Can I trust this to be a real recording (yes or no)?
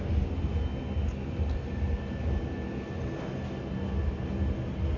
yes